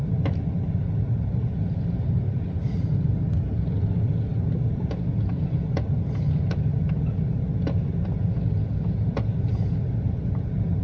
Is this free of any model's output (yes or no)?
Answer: yes